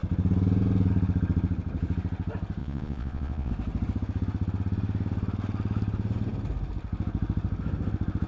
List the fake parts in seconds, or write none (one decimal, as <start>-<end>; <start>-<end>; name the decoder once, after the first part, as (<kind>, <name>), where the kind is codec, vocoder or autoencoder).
2.6-3.5 (vocoder, Vocos)